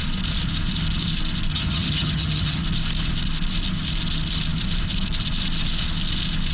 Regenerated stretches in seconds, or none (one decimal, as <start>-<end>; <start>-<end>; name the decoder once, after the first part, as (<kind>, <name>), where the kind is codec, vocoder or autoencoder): 1.5-2.6 (vocoder, HiFi-GAN)